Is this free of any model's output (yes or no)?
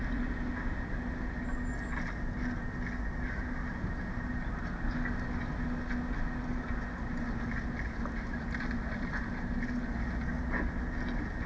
yes